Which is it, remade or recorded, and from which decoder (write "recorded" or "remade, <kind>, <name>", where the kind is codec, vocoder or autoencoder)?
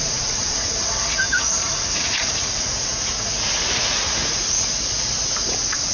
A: remade, vocoder, Vocos